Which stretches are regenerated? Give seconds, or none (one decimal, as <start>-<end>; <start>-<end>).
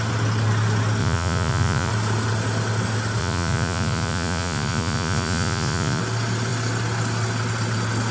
1.0-1.9; 3.2-6.0